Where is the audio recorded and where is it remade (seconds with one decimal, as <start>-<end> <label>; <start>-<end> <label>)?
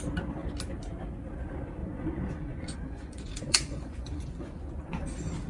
0.0-1.8 recorded; 1.8-5.1 remade; 5.1-5.5 recorded